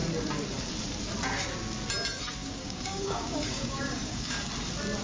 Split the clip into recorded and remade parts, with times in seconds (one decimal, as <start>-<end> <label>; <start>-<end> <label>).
0.0-2.4 recorded; 2.4-4.4 remade; 4.4-5.0 recorded